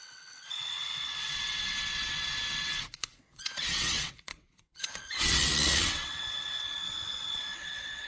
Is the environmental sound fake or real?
fake